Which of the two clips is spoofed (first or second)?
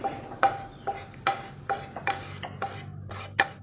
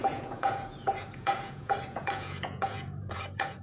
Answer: second